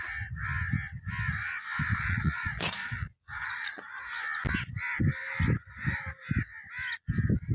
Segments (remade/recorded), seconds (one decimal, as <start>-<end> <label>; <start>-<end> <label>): 0.0-1.9 recorded; 1.9-3.9 remade; 3.9-7.5 recorded